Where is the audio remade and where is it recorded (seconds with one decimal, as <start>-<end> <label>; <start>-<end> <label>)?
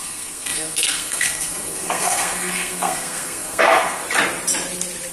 0.0-4.0 remade; 4.0-5.1 recorded